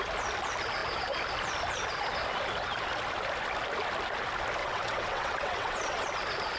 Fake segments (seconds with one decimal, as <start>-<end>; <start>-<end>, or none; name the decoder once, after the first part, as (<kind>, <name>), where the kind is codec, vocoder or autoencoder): 4.6-6.1 (vocoder, WaveNeXt)